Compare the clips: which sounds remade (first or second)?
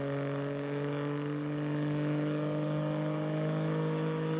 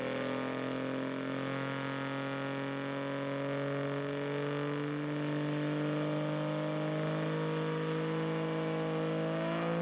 first